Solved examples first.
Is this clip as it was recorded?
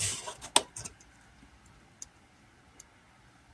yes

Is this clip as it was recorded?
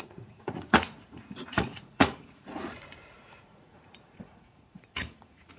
no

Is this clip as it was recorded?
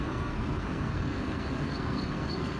no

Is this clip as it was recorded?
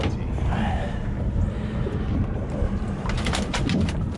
yes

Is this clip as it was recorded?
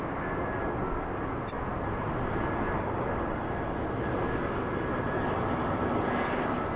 yes